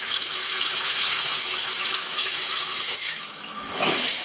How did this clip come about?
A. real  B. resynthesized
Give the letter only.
B